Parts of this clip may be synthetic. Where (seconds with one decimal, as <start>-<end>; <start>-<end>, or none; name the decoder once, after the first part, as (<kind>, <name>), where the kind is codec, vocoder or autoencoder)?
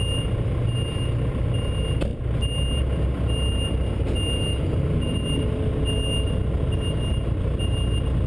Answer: none